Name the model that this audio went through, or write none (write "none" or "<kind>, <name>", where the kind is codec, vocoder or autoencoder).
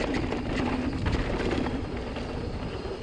none